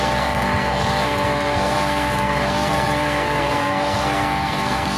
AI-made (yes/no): yes